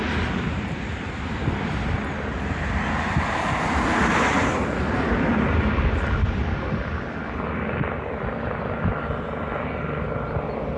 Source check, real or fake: real